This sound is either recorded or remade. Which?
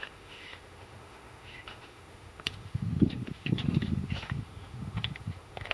remade